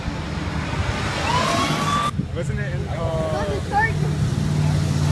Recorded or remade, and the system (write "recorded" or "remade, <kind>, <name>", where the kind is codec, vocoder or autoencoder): recorded